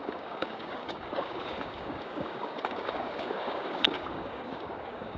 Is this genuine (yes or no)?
no